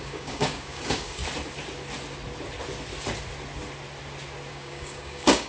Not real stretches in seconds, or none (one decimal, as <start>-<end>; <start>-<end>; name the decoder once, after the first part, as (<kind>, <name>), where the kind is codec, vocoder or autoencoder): 0.0-1.2 (codec, DAC); 4.5-5.5